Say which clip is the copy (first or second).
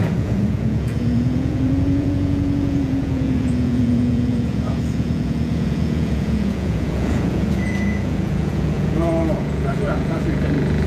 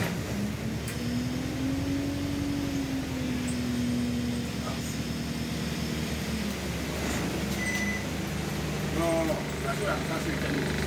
first